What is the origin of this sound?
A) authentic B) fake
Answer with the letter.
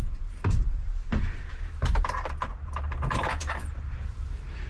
B